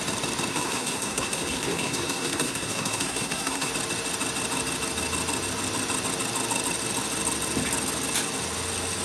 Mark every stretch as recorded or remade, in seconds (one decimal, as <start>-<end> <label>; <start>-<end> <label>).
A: 0.0-0.5 recorded; 0.5-3.7 remade; 3.7-9.0 recorded